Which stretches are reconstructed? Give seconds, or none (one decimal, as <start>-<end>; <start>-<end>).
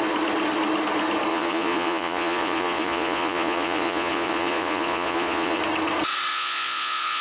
1.3-5.6; 6.3-7.2